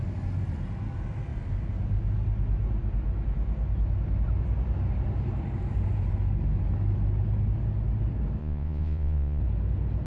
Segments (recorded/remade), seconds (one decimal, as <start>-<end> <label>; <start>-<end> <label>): 0.0-8.4 recorded; 8.4-9.4 remade; 9.4-10.1 recorded